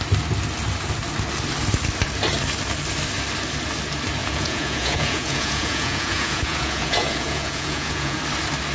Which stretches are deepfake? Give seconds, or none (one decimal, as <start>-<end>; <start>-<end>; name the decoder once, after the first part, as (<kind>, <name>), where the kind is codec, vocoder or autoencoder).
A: 4.2-8.2 (vocoder, Vocos)